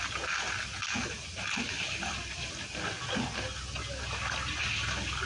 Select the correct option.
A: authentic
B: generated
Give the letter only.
A